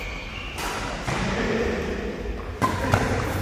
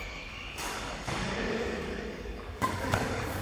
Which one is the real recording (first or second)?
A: first